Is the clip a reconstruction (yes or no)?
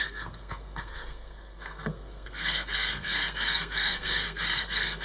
yes